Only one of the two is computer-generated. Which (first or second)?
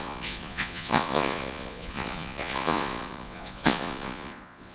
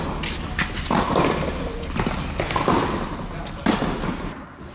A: first